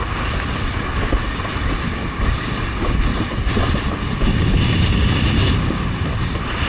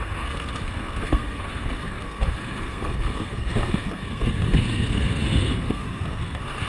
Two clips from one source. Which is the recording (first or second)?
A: first